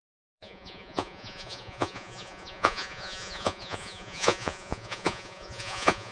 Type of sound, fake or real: fake